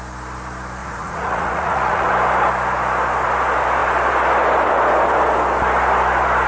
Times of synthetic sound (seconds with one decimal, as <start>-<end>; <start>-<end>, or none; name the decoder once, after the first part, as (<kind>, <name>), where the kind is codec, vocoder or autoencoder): 0.8-2.1 (vocoder, Vocos)